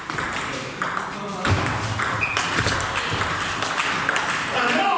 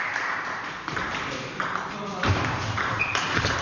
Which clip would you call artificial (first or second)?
second